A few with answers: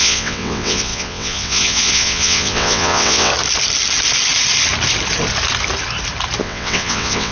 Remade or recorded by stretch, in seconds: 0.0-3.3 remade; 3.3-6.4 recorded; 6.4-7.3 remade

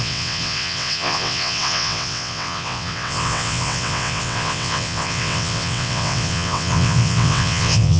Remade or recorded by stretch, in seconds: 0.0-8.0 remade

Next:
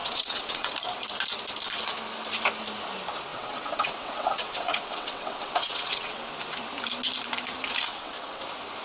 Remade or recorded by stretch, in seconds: 0.0-0.7 remade; 0.7-3.3 recorded; 3.3-6.3 remade; 6.3-7.9 recorded; 7.9-8.4 remade; 8.4-8.8 recorded